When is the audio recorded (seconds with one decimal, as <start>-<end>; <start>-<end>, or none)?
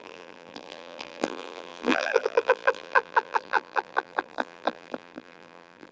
none